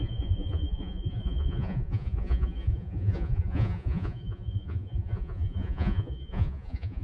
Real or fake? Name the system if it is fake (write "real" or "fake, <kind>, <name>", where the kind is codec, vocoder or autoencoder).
fake, vocoder, Vocos